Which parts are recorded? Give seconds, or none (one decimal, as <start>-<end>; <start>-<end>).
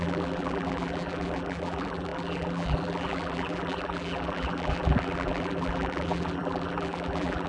none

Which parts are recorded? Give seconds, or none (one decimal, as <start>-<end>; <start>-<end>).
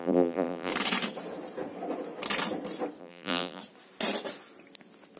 0.7-3.0; 3.6-5.2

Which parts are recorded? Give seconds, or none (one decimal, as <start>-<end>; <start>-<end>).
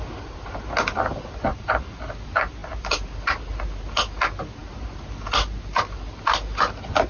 0.0-1.5; 2.1-7.1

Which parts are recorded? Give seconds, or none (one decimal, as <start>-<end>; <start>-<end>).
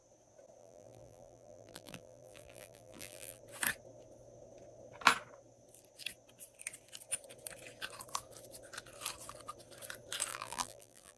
0.0-0.6; 3.4-10.3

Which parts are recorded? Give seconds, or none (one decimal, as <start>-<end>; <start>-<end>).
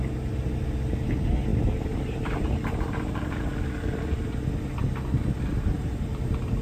0.0-6.1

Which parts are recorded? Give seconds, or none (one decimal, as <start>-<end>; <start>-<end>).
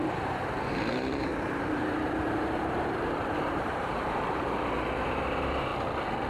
5.7-6.3